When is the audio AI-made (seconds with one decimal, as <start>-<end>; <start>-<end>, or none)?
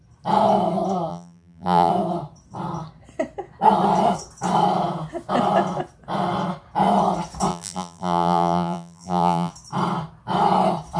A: 1.1-1.9; 7.5-9.5